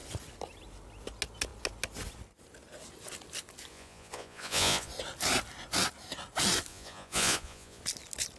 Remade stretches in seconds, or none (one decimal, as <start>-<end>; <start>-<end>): 3.7-4.9; 6.7-7.8